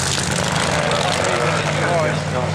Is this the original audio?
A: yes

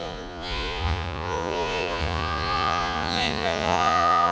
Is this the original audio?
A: no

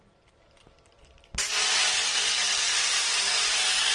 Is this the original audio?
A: no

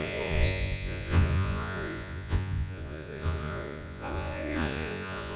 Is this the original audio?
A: no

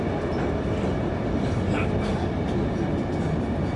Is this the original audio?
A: yes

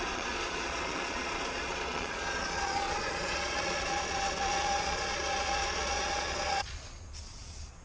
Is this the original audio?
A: no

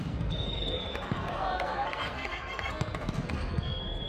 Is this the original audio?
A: no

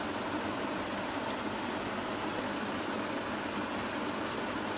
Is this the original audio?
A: yes